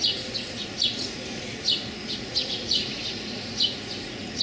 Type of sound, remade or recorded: remade